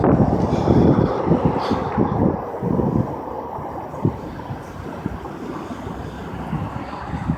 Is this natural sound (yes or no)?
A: yes